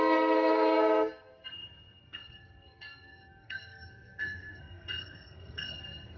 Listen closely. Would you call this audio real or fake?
fake